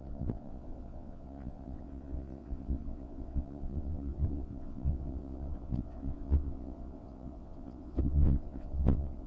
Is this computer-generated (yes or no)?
yes